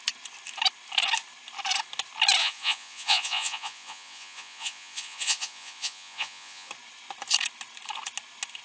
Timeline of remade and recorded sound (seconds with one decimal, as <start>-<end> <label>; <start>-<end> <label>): 0.0-2.4 recorded; 2.4-6.7 remade; 6.7-8.6 recorded